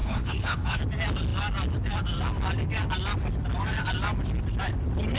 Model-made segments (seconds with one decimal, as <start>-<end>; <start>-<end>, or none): 0.0-0.8